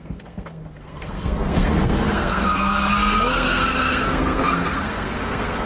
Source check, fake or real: fake